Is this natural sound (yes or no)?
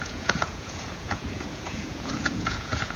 no